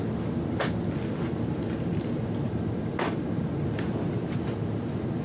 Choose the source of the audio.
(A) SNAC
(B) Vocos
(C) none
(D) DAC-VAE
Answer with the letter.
C